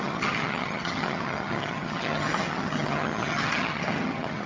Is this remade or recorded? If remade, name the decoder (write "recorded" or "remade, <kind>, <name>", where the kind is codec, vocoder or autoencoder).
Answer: remade, vocoder, HiFi-GAN